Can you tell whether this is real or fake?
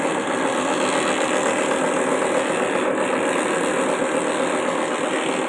real